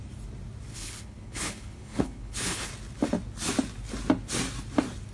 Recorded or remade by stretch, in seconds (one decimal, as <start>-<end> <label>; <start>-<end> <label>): 0.0-0.7 recorded; 0.7-2.7 remade; 2.7-5.1 recorded

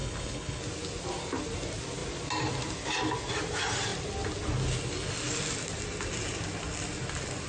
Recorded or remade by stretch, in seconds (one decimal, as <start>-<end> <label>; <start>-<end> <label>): 0.0-0.6 remade; 0.6-7.5 recorded

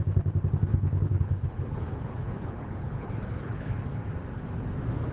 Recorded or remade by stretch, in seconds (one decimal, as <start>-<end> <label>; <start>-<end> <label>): 0.0-0.7 recorded; 0.7-3.8 remade; 3.8-5.1 recorded

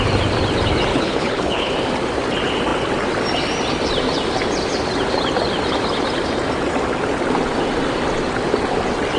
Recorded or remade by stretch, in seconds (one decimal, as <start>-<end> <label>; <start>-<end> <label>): 0.0-0.9 recorded; 0.9-1.7 remade; 1.7-9.2 recorded

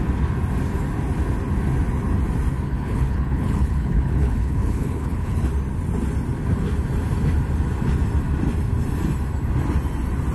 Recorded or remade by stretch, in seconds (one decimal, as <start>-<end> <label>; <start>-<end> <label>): 0.0-2.7 recorded; 2.7-5.5 remade; 5.5-10.3 recorded

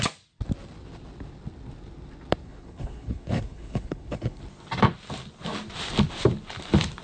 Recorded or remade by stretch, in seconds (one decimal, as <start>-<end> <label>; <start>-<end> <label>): 0.0-2.4 recorded; 2.4-4.4 remade; 4.4-7.0 recorded

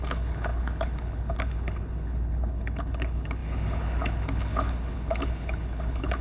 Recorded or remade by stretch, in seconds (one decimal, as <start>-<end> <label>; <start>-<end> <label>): 0.0-6.2 remade

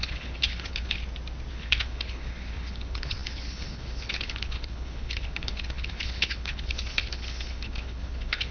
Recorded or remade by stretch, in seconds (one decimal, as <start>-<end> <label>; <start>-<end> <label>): 0.0-1.0 remade; 1.0-1.5 recorded; 1.5-8.5 remade